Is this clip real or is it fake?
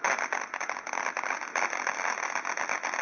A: real